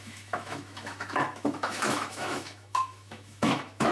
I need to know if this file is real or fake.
fake